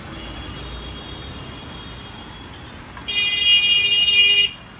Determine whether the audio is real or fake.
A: real